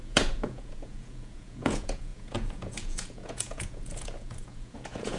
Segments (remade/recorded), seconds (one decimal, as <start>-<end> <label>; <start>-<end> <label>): 0.0-5.2 remade